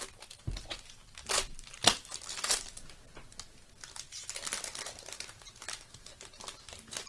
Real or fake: real